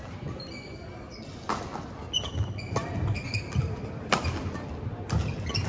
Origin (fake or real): real